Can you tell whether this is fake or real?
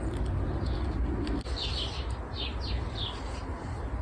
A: real